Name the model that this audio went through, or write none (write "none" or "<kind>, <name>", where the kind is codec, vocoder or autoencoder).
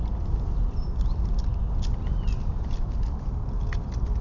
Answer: none